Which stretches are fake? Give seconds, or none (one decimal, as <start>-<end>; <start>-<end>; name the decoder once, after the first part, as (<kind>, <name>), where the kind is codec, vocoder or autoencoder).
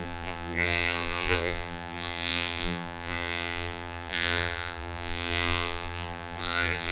0.0-6.9 (vocoder, BigVGAN v2)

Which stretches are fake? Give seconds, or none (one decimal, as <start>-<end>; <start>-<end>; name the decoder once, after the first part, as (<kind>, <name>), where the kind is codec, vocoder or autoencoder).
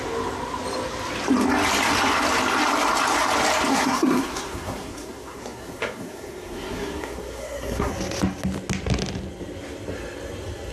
3.7-7.9 (codec, SNAC)